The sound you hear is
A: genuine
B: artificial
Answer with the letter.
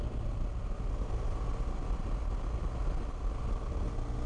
A